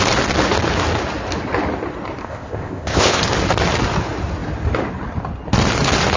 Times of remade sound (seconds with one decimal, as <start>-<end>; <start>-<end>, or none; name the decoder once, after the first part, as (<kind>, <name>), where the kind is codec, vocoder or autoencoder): 2.2-3.2 (codec, ZipCodec)